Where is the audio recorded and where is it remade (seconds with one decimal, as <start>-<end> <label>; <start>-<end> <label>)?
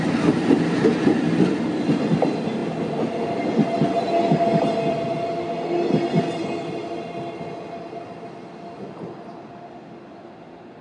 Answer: 0.0-10.8 recorded